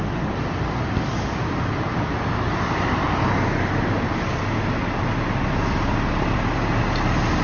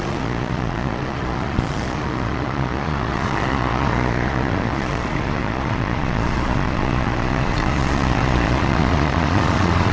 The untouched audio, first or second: first